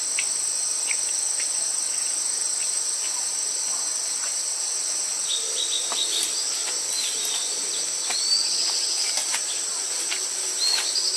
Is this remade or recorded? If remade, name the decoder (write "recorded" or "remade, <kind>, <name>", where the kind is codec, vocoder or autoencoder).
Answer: recorded